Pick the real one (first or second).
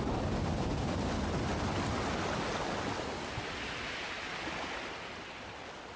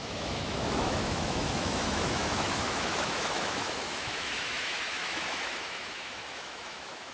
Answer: first